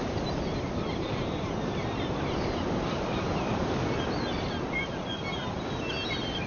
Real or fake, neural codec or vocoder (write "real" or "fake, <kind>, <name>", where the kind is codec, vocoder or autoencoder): real